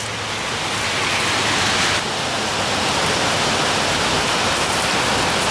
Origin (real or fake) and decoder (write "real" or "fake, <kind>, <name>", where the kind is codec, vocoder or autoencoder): real